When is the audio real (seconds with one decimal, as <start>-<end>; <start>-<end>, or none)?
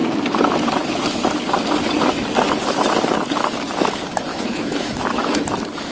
0.0-4.3; 5.4-5.9